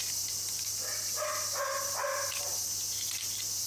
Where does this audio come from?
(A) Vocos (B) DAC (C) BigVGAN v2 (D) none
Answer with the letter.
D